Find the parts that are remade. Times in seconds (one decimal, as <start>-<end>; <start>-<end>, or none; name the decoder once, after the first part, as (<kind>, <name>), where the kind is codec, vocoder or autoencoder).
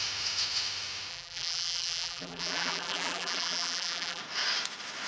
1.1-4.2 (vocoder, BigVGAN v2)